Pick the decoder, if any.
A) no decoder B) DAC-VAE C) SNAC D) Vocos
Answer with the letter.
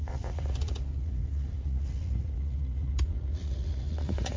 D